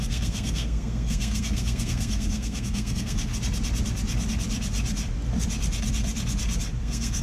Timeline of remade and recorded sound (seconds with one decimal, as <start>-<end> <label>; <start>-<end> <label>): 0.0-3.3 remade; 3.3-6.8 recorded; 6.8-7.2 remade